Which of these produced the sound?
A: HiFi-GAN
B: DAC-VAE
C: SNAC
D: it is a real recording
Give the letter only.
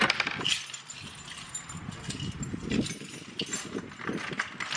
D